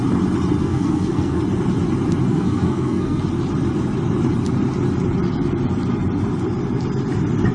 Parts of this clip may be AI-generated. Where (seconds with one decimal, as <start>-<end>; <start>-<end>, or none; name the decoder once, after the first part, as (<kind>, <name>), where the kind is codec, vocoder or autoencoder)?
0.6-1.4 (codec, SNAC); 2.3-3.2